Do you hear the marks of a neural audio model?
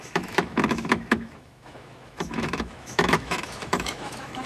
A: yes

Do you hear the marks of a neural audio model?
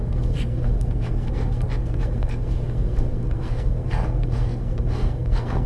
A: yes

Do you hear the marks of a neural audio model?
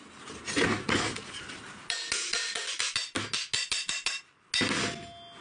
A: no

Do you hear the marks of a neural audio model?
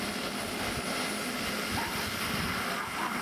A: no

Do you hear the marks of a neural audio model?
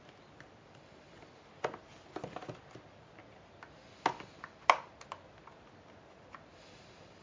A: no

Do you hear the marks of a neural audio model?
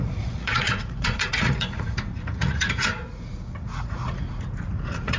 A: yes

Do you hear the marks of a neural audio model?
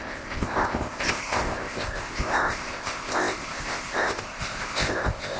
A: yes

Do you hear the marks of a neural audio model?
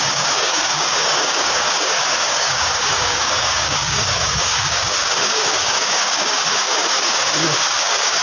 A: yes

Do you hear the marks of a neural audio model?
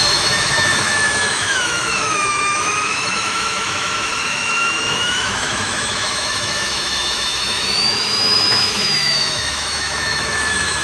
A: yes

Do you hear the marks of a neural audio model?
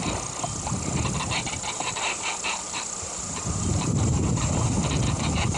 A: no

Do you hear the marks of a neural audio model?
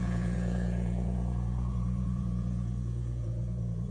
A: yes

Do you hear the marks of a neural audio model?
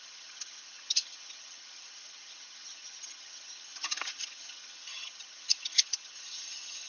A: yes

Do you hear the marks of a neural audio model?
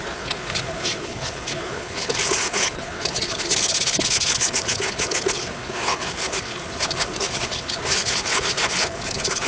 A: yes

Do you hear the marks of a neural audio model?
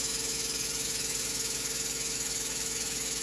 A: yes